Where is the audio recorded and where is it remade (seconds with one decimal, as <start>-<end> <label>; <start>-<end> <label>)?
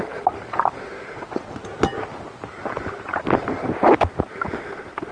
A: 0.0-5.1 recorded